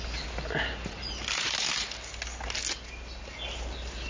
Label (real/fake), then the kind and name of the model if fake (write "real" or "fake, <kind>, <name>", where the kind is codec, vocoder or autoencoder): real